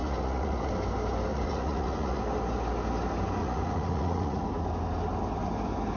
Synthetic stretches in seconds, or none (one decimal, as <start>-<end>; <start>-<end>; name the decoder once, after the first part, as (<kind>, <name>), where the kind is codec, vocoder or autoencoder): 0.0-0.7 (vocoder, Vocos); 1.3-2.2; 3.4-4.4